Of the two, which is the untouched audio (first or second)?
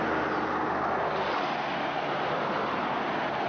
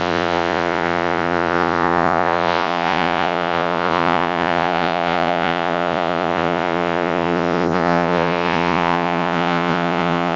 first